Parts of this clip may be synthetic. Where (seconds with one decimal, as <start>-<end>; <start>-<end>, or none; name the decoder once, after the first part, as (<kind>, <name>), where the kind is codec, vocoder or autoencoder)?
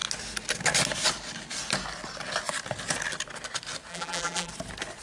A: 3.9-4.5 (vocoder, BigVGAN v2)